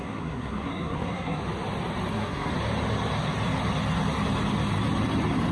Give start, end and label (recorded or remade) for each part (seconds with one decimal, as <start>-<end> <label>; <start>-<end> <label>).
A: 0.0-1.4 remade; 1.4-2.1 recorded; 2.1-2.5 remade; 2.5-5.5 recorded